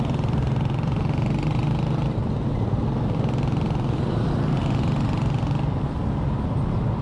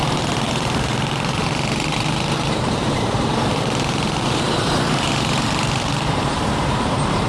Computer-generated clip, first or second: second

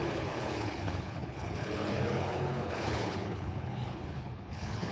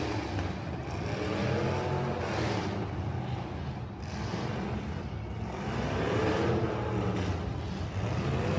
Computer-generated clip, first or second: first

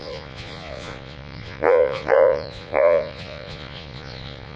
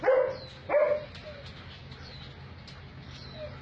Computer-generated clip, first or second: first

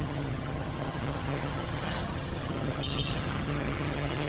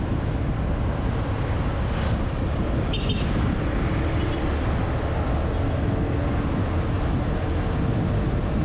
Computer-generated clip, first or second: first